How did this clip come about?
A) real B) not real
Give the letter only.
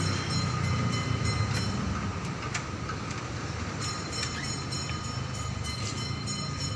A